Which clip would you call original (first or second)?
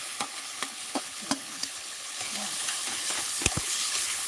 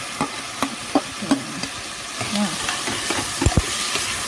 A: second